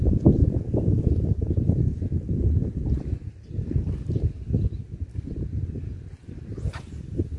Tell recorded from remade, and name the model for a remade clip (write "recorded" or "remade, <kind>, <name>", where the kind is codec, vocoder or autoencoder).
recorded